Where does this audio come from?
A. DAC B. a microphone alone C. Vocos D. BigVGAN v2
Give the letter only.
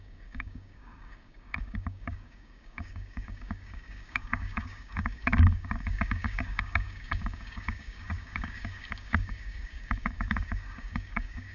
A